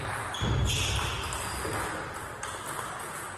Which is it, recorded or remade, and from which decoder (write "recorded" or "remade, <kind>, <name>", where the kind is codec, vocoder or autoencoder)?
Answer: recorded